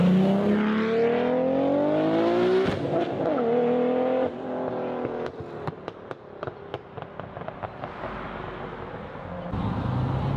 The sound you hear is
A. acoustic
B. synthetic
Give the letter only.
A